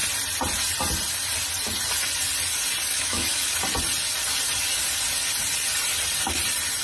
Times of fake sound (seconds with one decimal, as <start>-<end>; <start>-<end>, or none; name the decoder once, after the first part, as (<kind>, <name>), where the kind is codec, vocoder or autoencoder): 2.9-3.5 (autoencoder, DAC-VAE)